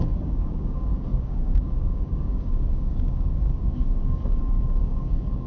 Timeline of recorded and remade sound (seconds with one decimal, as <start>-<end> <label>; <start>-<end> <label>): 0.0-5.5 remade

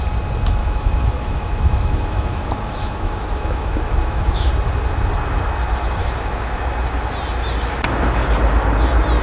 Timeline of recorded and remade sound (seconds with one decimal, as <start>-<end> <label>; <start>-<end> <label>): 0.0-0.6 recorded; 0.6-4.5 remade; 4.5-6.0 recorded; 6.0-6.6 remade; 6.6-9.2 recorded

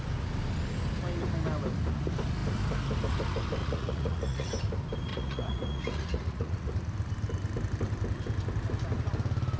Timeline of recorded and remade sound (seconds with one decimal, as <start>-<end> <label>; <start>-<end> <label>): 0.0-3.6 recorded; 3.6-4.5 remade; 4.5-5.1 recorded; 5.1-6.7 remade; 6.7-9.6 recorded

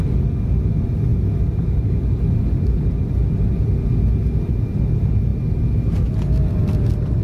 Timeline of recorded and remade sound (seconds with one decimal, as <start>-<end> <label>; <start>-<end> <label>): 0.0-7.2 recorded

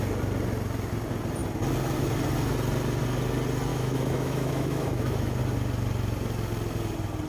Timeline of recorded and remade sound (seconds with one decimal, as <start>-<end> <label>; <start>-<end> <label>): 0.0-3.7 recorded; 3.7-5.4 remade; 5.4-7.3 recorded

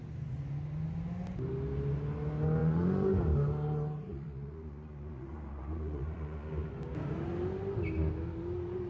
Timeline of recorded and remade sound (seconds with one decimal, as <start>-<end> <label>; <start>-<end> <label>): 0.0-2.6 recorded; 2.6-3.1 remade; 3.1-4.1 recorded; 4.1-6.7 remade; 6.7-8.9 recorded